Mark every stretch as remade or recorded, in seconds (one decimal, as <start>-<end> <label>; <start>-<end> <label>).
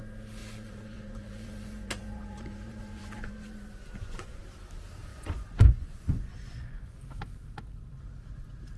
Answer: 0.0-0.4 recorded; 0.4-4.4 remade; 4.4-5.1 recorded; 5.1-7.0 remade; 7.0-8.8 recorded